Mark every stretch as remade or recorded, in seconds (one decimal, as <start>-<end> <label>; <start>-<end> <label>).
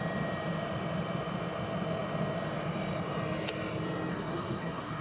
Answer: 0.0-4.1 recorded; 4.1-5.0 remade